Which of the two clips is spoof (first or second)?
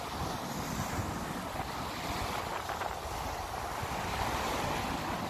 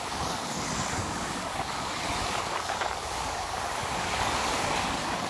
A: second